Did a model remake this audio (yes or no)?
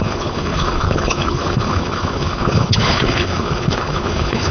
yes